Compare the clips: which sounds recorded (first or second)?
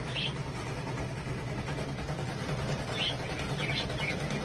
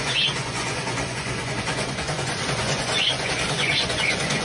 first